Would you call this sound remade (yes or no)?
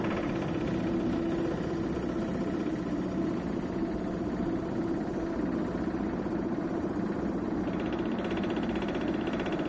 no